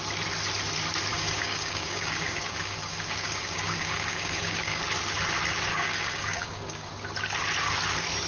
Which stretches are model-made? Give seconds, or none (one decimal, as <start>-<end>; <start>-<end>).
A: 1.1-4.8; 5.7-6.9